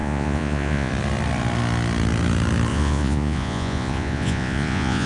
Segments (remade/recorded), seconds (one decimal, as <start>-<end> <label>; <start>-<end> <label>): 0.0-0.9 remade; 0.9-2.7 recorded; 2.7-5.1 remade

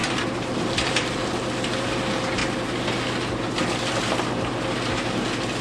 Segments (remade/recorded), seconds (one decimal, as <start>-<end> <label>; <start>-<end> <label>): 0.0-1.3 remade; 1.3-5.6 recorded

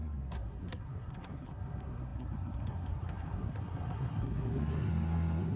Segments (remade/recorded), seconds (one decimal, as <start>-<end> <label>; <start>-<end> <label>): 0.0-5.6 remade

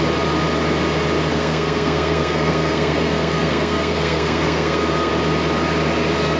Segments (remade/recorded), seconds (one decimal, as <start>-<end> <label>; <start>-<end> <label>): 0.0-1.3 recorded; 1.3-5.1 remade; 5.1-6.4 recorded

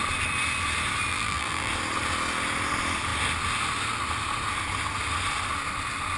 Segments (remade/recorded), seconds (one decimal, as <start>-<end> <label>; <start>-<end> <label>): 0.0-1.1 recorded; 1.1-1.7 remade; 1.7-6.2 recorded

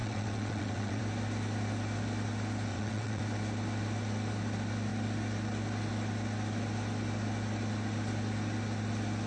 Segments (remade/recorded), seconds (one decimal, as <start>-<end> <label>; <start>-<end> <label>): 0.0-1.0 remade; 1.0-2.7 recorded; 2.7-3.2 remade; 3.2-9.3 recorded

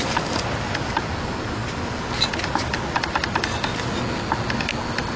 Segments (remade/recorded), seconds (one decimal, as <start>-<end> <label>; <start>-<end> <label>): 0.0-5.2 recorded